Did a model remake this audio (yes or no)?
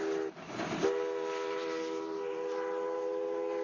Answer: no